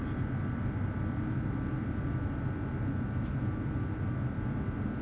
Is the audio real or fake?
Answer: real